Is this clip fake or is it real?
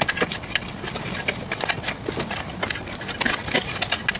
real